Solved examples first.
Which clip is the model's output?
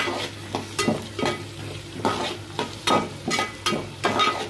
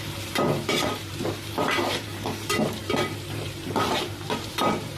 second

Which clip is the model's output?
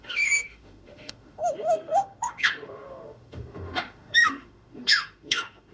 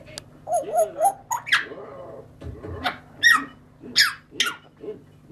first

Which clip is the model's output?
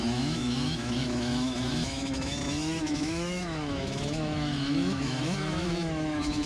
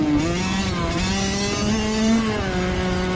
first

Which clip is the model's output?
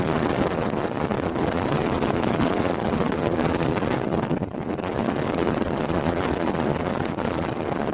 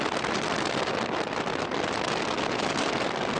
first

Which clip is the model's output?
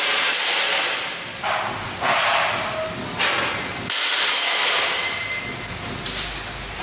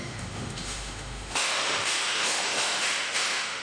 second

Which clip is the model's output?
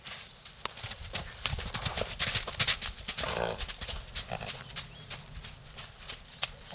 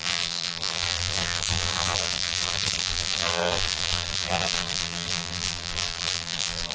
second